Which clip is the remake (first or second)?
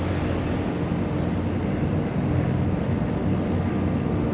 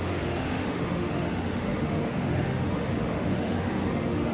second